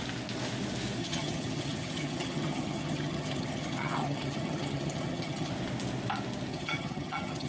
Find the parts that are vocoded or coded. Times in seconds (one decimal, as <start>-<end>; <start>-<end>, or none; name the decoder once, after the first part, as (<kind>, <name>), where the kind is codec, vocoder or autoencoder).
1.0-5.5 (vocoder, HiFi-GAN); 6.5-7.5